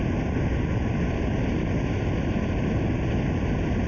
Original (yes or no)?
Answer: yes